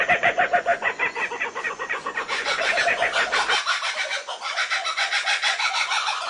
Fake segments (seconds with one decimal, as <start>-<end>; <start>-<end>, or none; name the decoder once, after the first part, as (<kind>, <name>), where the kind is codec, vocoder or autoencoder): 0.0-3.1 (vocoder, Vocos); 4.0-6.3